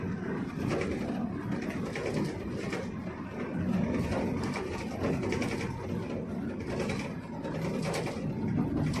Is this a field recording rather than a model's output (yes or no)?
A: yes